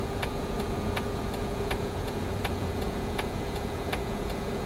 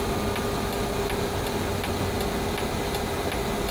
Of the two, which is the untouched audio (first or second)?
second